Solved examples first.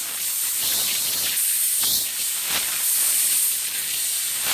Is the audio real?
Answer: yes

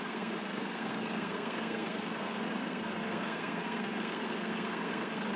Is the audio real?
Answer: no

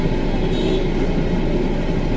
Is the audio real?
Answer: yes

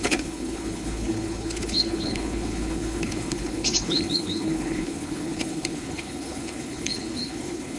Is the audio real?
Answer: no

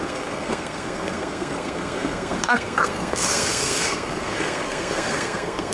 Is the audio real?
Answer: no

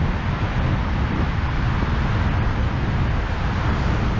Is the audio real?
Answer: yes